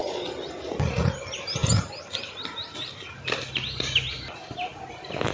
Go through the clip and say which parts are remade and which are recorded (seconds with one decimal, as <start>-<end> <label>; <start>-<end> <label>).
0.0-5.3 recorded